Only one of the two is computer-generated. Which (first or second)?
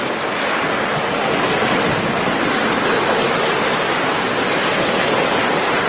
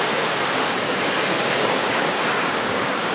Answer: second